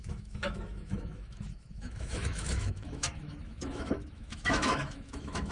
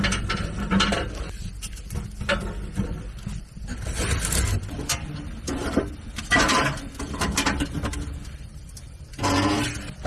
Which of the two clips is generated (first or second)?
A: first